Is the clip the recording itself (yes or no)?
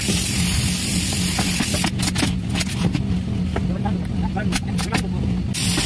yes